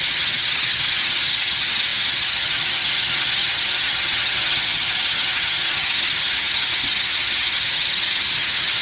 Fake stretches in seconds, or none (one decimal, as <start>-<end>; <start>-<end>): 0.0-8.8